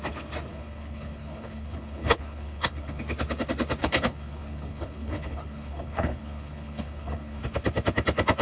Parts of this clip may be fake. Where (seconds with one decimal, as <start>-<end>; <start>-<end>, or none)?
0.5-3.0; 3.8-7.4